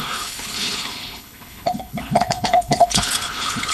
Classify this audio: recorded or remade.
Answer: remade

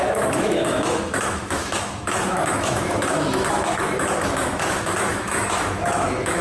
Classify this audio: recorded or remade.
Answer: remade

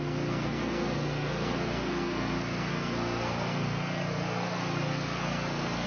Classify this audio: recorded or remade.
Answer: remade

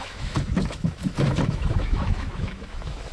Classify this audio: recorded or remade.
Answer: remade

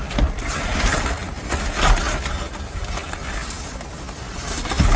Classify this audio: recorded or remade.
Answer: recorded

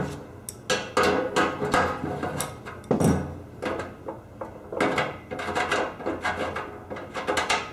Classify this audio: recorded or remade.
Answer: recorded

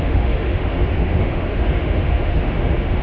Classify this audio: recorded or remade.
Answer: remade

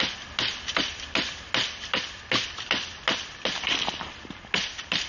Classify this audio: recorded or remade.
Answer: recorded